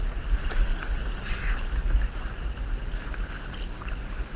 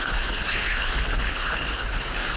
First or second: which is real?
first